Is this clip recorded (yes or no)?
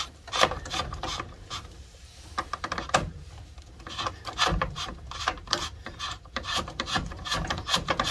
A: no